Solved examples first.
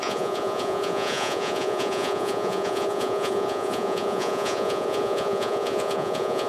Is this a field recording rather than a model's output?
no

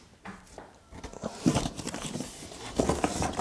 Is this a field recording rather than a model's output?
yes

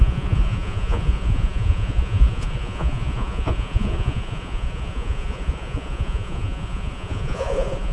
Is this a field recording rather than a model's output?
no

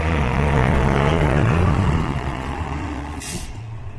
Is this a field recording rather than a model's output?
no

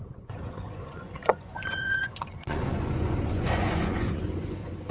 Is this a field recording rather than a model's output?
no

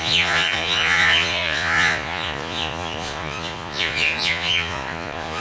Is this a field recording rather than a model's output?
no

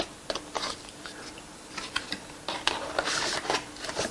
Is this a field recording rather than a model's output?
yes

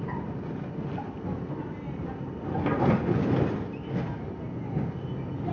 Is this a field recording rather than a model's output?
yes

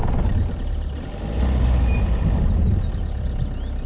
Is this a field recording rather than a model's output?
yes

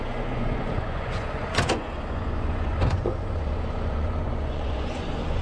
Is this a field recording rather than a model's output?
no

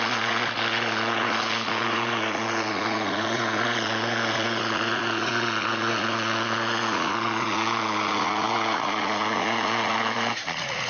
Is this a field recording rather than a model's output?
no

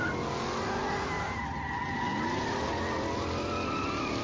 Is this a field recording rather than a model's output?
yes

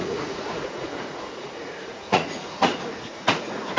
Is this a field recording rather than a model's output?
no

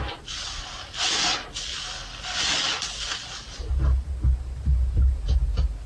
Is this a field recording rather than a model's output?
yes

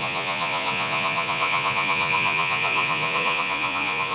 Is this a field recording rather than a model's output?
no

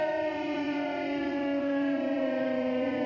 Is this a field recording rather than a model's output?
no